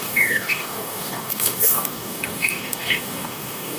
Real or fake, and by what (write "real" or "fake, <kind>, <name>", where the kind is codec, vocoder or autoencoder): fake, codec, DAC